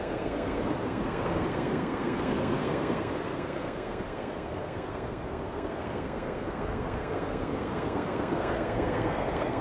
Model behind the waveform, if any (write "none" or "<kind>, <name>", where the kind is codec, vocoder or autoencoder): codec, SNAC